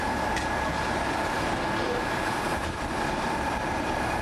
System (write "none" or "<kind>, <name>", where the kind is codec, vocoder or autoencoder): vocoder, BigVGAN v2